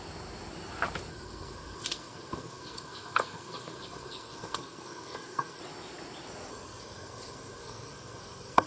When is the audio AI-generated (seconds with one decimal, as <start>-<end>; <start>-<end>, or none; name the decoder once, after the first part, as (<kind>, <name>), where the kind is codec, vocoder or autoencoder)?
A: 1.1-5.6 (codec, SNAC); 6.5-8.7